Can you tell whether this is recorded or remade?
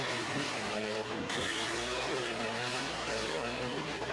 remade